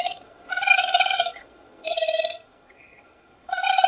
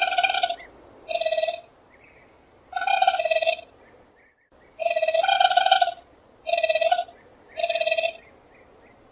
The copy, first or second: first